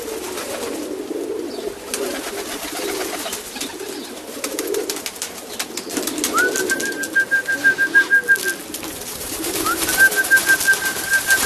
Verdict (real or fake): real